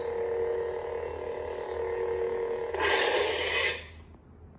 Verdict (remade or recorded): recorded